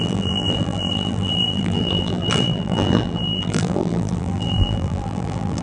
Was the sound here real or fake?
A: fake